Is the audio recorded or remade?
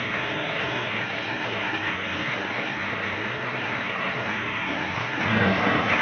remade